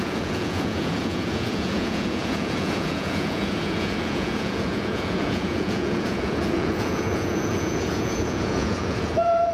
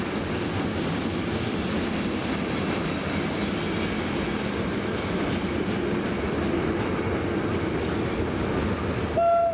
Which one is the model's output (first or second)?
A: first